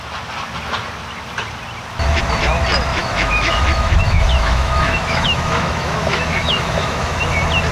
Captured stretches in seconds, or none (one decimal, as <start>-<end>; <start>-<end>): 0.0-2.9; 7.2-7.7